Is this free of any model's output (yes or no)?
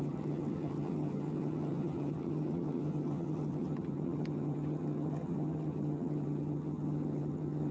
no